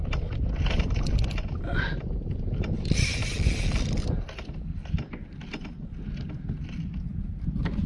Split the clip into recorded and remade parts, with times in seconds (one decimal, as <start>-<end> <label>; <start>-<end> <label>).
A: 0.0-7.9 recorded